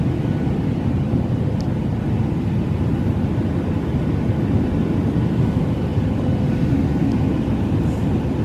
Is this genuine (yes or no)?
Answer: yes